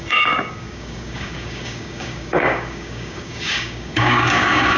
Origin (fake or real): fake